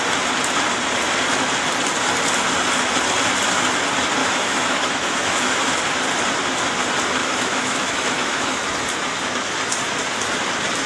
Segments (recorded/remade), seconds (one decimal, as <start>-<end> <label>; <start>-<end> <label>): 0.0-4.2 recorded; 4.2-5.8 remade; 5.8-7.2 recorded; 7.2-8.6 remade; 8.6-10.9 recorded